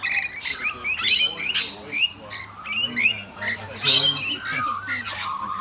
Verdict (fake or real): real